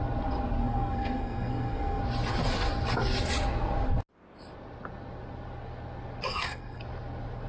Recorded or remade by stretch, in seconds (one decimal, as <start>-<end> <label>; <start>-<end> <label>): 0.0-0.6 recorded; 0.6-2.0 remade; 2.0-6.3 recorded; 6.3-6.8 remade; 6.8-7.5 recorded